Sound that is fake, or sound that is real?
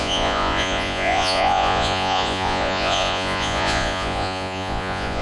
fake